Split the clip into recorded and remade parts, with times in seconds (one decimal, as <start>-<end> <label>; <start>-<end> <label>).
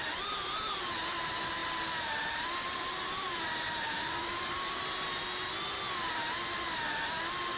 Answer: 0.0-7.6 recorded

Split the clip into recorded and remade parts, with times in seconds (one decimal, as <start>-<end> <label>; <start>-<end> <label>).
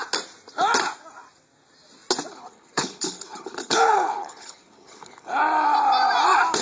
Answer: 0.0-2.3 recorded; 2.3-5.4 remade; 5.4-6.6 recorded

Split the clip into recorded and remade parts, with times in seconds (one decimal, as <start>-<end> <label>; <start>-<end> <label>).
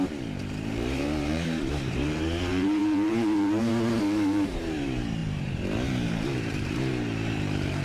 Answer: 0.0-7.8 remade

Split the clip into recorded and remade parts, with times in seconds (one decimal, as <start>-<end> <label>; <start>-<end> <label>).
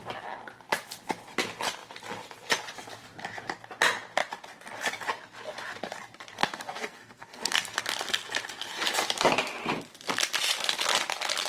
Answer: 0.0-6.4 recorded; 6.4-7.8 remade; 7.8-11.5 recorded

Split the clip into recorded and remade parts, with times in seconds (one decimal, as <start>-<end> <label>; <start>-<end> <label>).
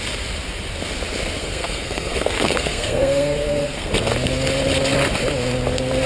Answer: 0.0-1.4 recorded; 1.4-3.9 remade; 3.9-6.1 recorded